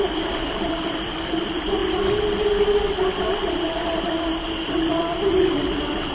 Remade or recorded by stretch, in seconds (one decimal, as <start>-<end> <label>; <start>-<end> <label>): 0.0-1.8 remade; 1.8-4.9 recorded; 4.9-6.1 remade